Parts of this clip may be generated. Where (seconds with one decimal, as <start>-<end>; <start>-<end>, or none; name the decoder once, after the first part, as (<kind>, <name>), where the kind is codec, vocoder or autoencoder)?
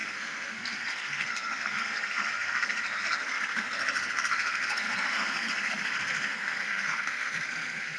0.0-8.0 (codec, SNAC)